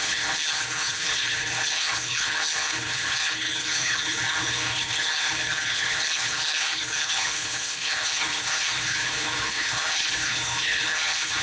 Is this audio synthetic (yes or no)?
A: yes